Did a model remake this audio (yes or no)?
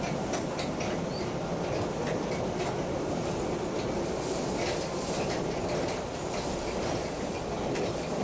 no